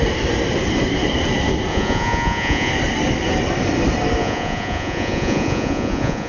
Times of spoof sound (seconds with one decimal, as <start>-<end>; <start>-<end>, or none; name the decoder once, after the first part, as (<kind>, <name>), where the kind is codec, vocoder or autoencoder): 1.7-2.7 (vocoder, Vocos); 4.2-6.3